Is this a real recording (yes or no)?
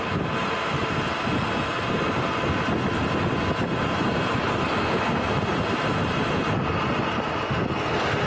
yes